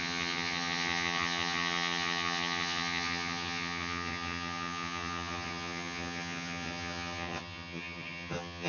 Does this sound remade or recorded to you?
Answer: remade